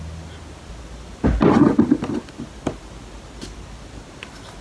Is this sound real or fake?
real